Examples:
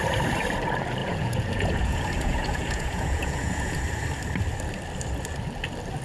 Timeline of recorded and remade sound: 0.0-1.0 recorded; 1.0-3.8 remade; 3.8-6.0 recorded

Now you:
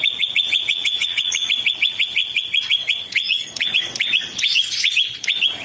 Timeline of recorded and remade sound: 0.0-5.6 remade

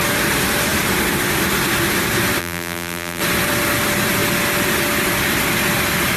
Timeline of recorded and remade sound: 0.0-2.4 recorded; 2.4-3.2 remade; 3.2-6.2 recorded

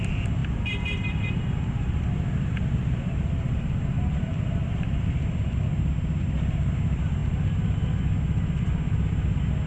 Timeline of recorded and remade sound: 0.0-0.4 recorded; 0.4-5.1 remade; 5.1-9.7 recorded

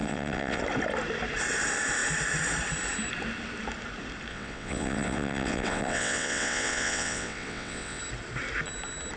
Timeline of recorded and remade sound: 0.0-0.6 remade; 0.6-4.3 recorded; 4.3-8.0 remade; 8.0-9.2 recorded